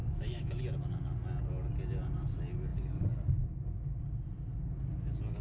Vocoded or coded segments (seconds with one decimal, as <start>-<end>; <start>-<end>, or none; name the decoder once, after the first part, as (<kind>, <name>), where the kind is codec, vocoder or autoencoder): 0.0-0.6 (autoencoder, DAC-VAE)